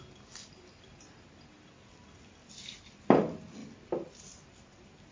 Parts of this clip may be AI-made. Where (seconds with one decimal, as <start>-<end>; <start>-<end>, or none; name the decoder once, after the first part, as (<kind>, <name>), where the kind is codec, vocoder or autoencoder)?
none